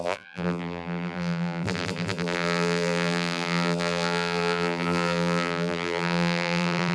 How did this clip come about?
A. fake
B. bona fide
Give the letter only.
A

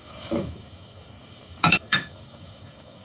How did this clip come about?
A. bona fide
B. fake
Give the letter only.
B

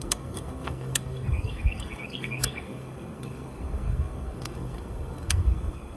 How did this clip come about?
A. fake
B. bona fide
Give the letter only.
A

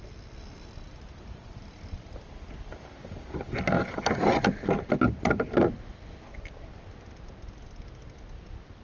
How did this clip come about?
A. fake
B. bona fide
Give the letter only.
B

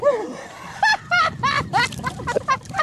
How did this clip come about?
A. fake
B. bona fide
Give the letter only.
A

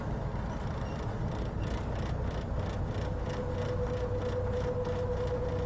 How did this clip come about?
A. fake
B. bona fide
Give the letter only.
B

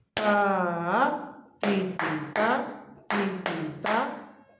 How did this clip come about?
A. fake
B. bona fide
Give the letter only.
B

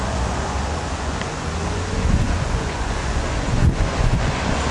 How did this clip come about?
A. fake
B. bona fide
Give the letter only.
A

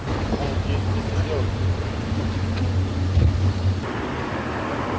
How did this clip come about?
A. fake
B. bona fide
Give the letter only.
B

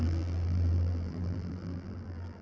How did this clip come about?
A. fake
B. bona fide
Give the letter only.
A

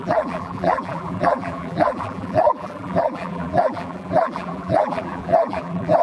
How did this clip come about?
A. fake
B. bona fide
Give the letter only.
A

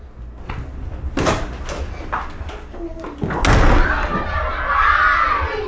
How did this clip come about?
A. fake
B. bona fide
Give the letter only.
B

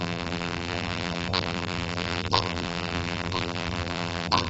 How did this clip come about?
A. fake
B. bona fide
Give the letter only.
A